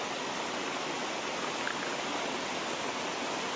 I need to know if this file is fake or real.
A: real